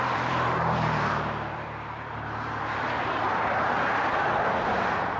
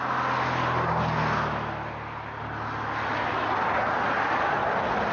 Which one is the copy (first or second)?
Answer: first